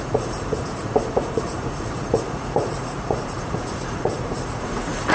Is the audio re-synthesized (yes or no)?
yes